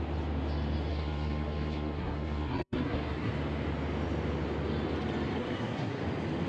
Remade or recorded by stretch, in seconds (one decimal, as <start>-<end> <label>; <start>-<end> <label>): 0.0-0.9 recorded; 0.9-3.3 remade; 3.3-5.4 recorded; 5.4-6.0 remade; 6.0-6.5 recorded